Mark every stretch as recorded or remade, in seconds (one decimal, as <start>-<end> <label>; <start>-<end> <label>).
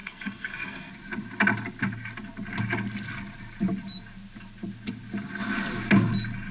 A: 0.0-0.9 remade; 0.9-6.5 recorded